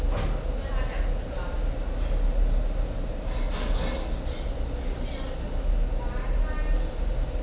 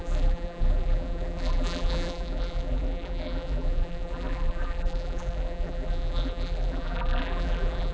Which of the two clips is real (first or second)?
first